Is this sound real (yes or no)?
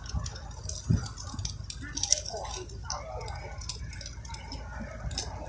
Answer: yes